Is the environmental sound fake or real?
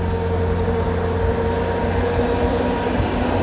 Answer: real